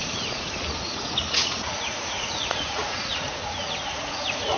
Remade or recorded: remade